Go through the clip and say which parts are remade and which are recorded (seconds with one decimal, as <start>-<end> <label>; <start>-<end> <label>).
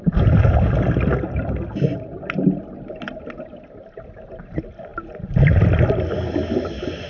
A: 0.0-7.1 recorded